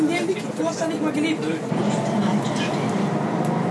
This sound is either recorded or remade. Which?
recorded